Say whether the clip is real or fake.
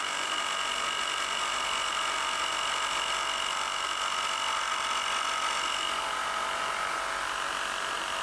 real